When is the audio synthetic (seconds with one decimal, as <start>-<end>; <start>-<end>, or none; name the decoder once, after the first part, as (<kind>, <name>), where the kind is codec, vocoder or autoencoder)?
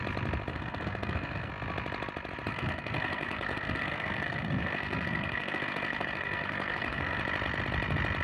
0.5-1.5 (codec, SNAC); 2.5-7.2